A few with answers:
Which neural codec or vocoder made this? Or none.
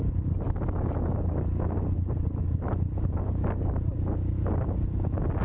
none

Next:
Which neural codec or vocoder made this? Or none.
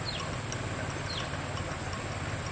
none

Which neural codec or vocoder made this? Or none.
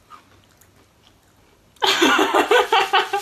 none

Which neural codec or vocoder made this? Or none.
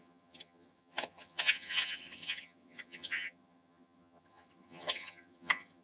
vocoder, HiFi-GAN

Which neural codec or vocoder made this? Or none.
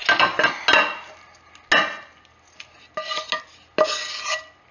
none